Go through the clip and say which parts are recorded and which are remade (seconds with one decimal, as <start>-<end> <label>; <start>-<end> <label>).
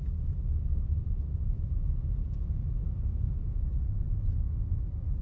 0.0-2.0 recorded; 2.0-5.2 remade